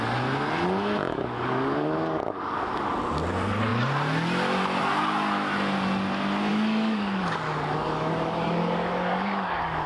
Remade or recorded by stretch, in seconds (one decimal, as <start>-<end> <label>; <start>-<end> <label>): 0.0-1.0 recorded; 1.0-2.8 remade; 2.8-6.5 recorded; 6.5-9.9 remade